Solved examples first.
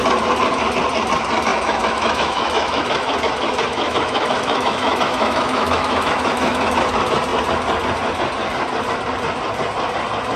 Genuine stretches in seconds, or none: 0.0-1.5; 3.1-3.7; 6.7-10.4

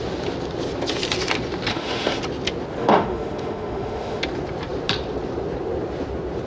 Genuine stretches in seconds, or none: 0.0-1.7; 2.2-2.8; 4.2-6.5

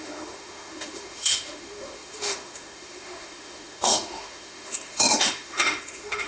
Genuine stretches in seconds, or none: none

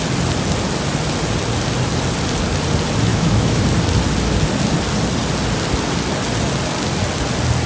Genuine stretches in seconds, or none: 0.0-3.1; 3.6-7.7

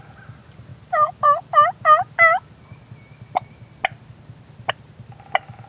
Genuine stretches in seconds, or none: 0.0-5.7

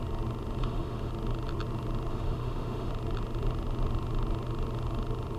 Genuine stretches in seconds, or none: 0.0-0.6; 1.1-2.1; 2.9-5.4

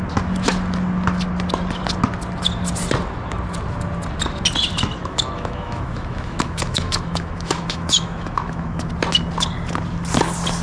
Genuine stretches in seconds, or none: 0.0-5.0; 8.9-10.6